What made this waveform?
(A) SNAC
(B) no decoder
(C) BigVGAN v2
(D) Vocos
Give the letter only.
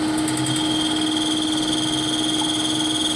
B